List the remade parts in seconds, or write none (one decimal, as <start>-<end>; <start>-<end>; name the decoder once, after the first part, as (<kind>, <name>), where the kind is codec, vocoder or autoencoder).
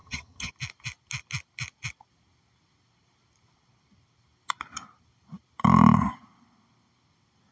0.0-0.5 (vocoder, HiFi-GAN)